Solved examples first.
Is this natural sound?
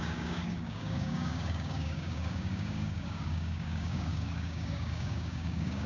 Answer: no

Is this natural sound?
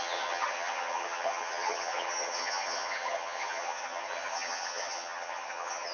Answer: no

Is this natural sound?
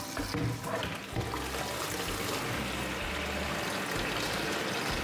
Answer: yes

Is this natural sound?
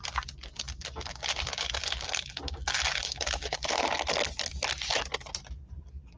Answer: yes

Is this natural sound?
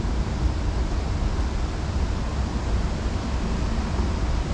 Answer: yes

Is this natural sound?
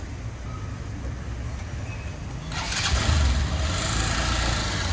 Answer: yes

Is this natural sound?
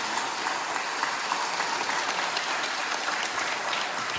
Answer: yes